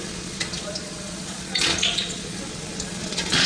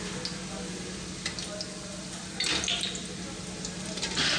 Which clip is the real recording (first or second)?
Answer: second